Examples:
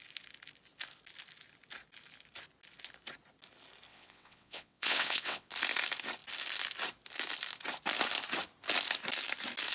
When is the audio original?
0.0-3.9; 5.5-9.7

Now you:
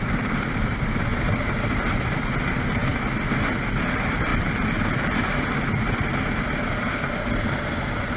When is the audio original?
2.8-3.8

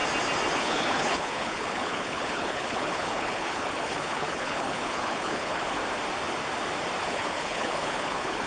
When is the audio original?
0.0-0.6; 5.8-7.0

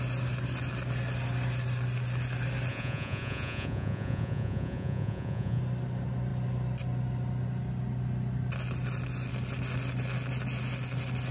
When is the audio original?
0.0-2.7; 5.6-11.3

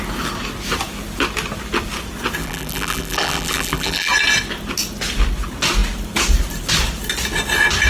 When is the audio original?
0.0-2.4; 4.1-7.9

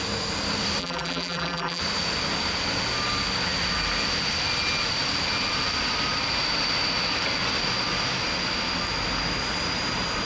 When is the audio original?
0.0-0.8; 1.8-10.3

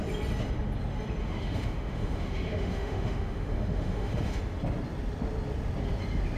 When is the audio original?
0.0-1.2; 4.4-6.4

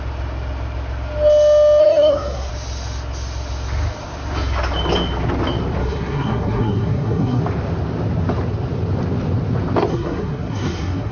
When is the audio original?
0.0-1.8; 2.5-5.8; 7.4-9.9